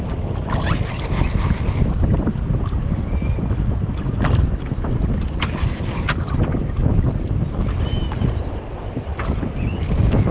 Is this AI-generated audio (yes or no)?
yes